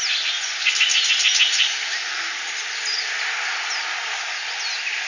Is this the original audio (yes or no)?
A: yes